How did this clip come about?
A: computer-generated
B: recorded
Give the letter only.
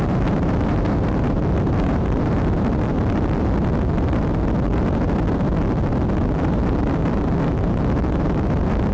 A